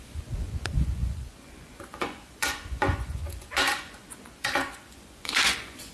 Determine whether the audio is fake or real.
fake